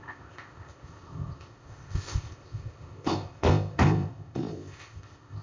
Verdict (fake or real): fake